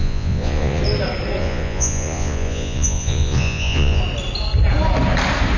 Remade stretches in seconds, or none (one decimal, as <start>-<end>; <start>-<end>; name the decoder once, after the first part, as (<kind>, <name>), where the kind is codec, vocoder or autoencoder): 0.0-0.8 (vocoder, Vocos); 1.4-4.0